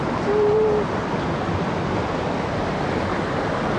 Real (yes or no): yes